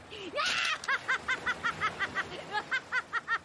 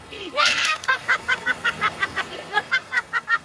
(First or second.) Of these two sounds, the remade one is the second